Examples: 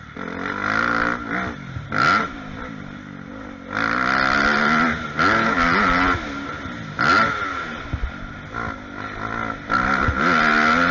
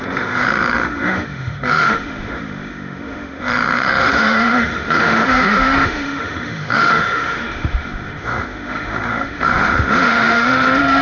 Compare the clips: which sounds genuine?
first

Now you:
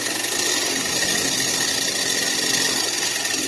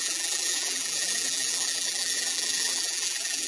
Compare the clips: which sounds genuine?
first